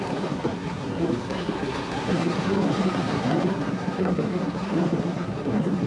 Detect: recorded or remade remade